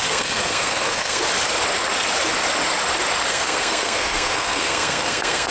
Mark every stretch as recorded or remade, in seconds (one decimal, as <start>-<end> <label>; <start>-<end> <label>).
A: 0.0-1.2 remade; 1.2-3.3 recorded; 3.3-5.5 remade